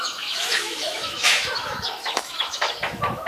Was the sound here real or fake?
fake